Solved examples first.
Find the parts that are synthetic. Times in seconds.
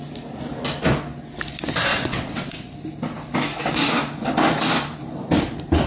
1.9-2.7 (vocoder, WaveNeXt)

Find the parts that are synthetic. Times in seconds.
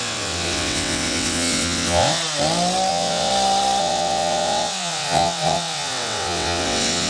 0.0-2.2 (vocoder, WaveNeXt); 2.9-3.3; 3.8-7.1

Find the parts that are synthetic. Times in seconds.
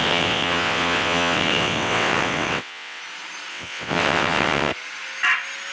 0.0-3.0 (vocoder, WaveNeXt); 3.5-4.7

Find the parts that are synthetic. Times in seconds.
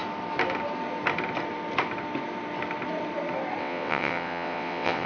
3.6-5.1 (vocoder, WaveNeXt)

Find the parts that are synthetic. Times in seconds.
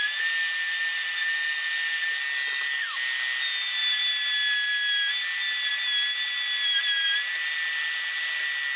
none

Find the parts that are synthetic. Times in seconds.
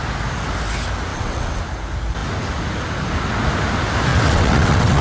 1.1-1.6 (vocoder, WaveNeXt); 4.1-5.0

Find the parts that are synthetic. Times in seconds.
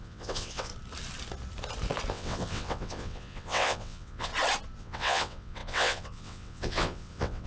0.0-0.7 (vocoder, WaveNeXt); 2.1-4.3; 4.8-7.5